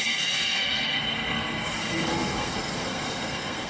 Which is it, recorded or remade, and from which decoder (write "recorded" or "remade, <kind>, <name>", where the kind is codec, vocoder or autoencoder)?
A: remade, codec, SNAC